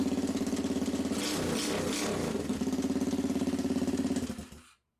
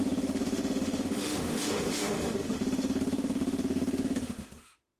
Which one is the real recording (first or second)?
first